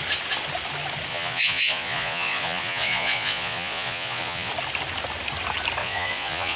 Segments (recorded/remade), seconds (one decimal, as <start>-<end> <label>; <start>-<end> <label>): 0.0-1.1 recorded; 1.1-4.5 remade; 4.5-5.8 recorded; 5.8-6.6 remade